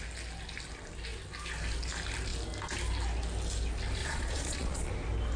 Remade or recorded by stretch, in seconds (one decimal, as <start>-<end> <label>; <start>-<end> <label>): 0.0-4.0 recorded; 4.0-4.9 remade; 4.9-5.4 recorded